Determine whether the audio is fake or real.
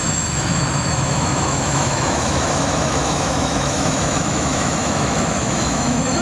fake